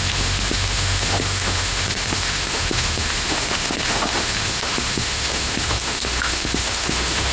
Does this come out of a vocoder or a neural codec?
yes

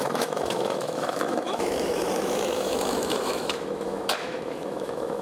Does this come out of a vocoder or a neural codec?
yes